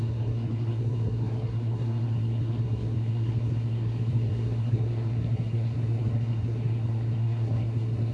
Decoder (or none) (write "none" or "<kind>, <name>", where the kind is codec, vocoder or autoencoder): codec, SNAC